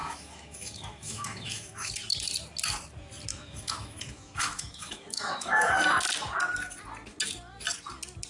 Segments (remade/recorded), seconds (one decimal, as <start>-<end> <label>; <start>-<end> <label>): 0.0-1.9 remade; 1.9-3.3 recorded; 3.3-5.7 remade; 5.7-8.3 recorded

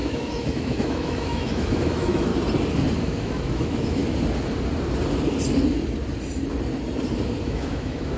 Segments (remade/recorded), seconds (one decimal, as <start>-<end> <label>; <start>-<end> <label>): 0.0-2.3 remade; 2.3-3.0 recorded; 3.0-4.0 remade; 4.0-7.4 recorded; 7.4-8.2 remade

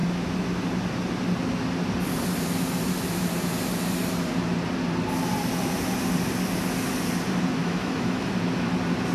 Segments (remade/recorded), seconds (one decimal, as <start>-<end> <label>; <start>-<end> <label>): 0.0-7.6 recorded; 7.6-8.3 remade; 8.3-9.1 recorded

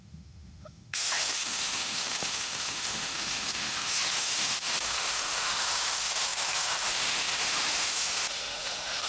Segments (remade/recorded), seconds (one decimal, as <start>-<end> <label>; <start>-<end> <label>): 0.0-9.1 remade

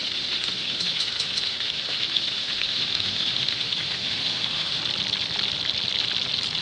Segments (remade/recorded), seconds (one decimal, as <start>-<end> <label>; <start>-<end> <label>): 0.0-4.8 remade; 4.8-6.6 recorded

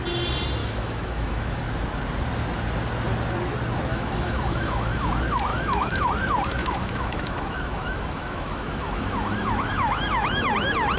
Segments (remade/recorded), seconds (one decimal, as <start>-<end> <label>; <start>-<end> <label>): 0.0-0.6 recorded; 0.6-1.6 remade; 1.6-3.9 recorded; 3.9-5.1 remade; 5.1-5.5 recorded; 5.5-6.1 remade; 6.1-6.6 recorded; 6.6-10.5 remade; 10.5-11.0 recorded

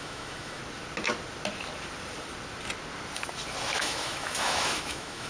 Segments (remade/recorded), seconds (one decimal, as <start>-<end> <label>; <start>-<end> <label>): 0.0-0.6 remade; 0.6-3.8 recorded; 3.8-5.3 remade